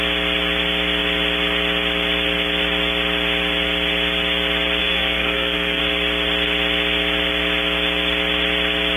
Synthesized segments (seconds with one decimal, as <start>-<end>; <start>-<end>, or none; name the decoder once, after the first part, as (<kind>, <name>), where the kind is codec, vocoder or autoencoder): 4.8-5.8 (codec, SNAC)